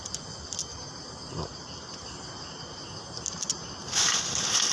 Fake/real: real